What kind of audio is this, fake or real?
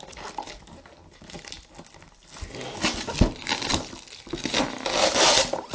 real